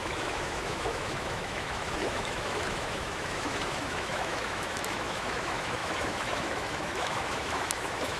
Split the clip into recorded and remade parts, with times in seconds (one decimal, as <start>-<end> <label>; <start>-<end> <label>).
0.0-8.2 remade